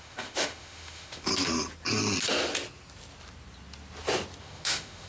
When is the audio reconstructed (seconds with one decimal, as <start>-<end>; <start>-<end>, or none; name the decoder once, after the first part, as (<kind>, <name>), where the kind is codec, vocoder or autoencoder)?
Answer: 0.0-1.3 (autoencoder, DAC-VAE); 4.4-5.1